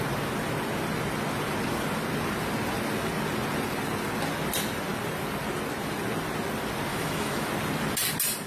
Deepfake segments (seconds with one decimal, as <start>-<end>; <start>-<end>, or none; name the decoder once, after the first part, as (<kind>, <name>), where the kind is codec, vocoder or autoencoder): 6.9-7.5 (autoencoder, DAC-VAE)